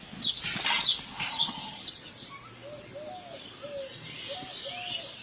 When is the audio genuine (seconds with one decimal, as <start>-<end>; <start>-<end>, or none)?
0.0-1.3; 2.0-5.2